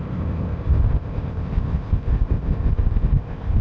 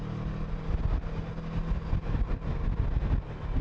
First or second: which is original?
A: second